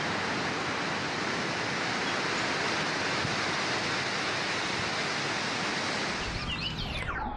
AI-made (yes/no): no